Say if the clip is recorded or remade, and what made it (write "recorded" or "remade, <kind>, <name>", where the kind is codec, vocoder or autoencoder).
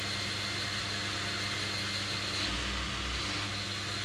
recorded